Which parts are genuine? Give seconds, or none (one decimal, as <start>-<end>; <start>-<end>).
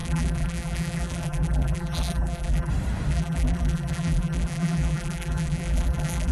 2.7-3.1